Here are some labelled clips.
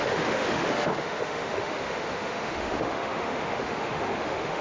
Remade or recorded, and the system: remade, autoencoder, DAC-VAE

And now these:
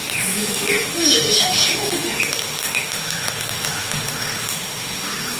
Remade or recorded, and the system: remade, autoencoder, DAC-VAE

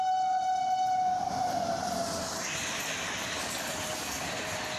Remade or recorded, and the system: recorded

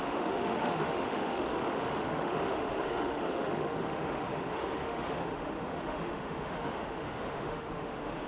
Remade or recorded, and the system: remade, autoencoder, DAC-VAE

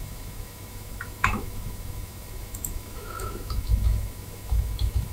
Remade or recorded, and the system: remade, autoencoder, DAC-VAE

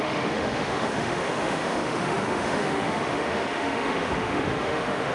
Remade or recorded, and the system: remade, autoencoder, DAC-VAE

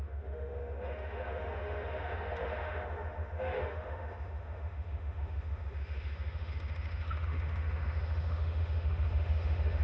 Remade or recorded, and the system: remade, autoencoder, DAC-VAE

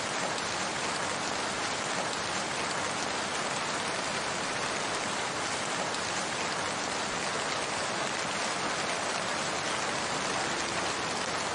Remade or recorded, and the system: recorded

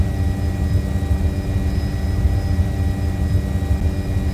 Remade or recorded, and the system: recorded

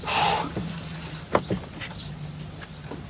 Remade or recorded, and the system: recorded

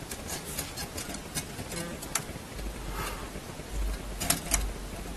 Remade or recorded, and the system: recorded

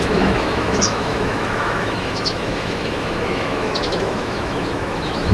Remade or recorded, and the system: remade, autoencoder, DAC-VAE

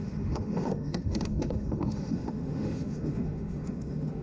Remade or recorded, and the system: remade, autoencoder, DAC-VAE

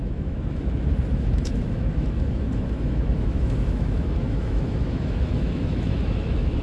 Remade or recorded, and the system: remade, autoencoder, DAC-VAE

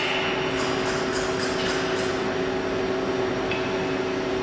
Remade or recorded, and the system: recorded